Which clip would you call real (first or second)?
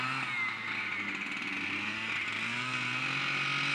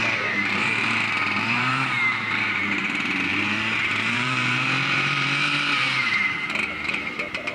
first